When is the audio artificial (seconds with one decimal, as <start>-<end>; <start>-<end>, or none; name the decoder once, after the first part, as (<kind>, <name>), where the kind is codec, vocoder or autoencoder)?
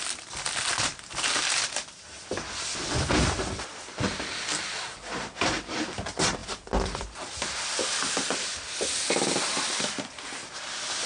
none